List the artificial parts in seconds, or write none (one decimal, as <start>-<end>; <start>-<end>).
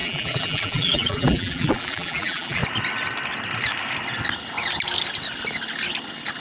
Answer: 0.0-2.6